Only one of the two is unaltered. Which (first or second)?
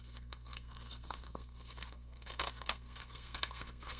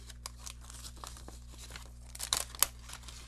second